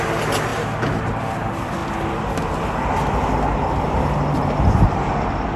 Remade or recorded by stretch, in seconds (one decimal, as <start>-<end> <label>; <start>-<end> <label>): 0.0-5.6 recorded